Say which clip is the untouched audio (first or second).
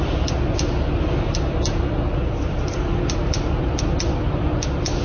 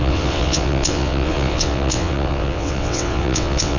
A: first